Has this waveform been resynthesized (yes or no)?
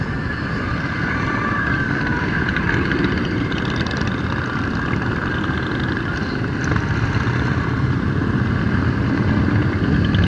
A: yes